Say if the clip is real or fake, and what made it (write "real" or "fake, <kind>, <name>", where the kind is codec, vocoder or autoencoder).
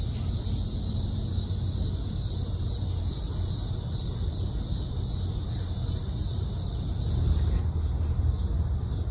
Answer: real